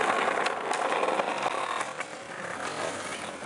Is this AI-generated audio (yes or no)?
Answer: no